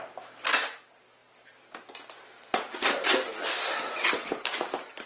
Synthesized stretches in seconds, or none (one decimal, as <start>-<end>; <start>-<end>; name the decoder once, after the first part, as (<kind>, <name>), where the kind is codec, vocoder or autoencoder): none